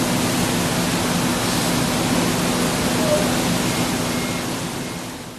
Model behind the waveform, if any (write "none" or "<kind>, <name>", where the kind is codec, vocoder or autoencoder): none